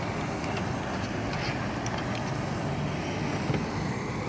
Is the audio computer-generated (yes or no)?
no